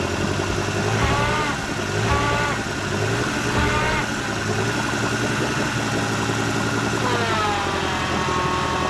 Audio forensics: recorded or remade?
recorded